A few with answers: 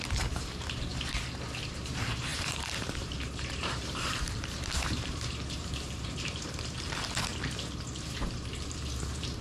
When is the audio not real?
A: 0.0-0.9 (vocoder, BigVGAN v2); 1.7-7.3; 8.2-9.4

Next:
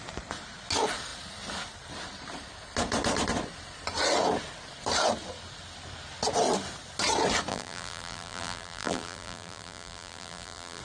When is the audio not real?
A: 7.5-10.8 (vocoder, BigVGAN v2)

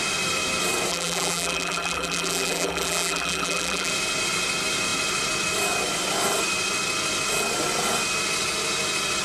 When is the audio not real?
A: 0.9-3.9 (vocoder, BigVGAN v2)

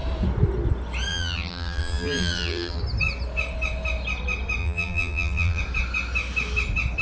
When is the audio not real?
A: 1.1-2.8 (vocoder, BigVGAN v2); 4.6-5.6

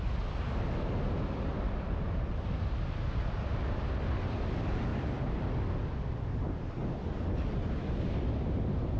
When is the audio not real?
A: 4.9-5.6 (vocoder, BigVGAN v2)

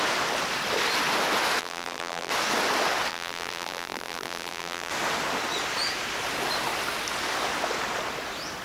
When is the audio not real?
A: 1.6-2.3 (vocoder, BigVGAN v2); 3.1-4.9